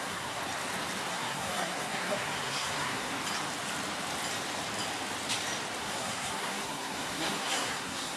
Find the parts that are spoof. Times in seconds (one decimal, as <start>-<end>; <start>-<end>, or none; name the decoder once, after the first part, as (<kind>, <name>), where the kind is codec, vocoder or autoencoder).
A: 0.0-0.4 (codec, SNAC); 1.1-3.1; 5.8-8.2